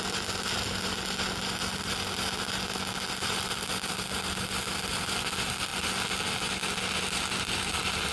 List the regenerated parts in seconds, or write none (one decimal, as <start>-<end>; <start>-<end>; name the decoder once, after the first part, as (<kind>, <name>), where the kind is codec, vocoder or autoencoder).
none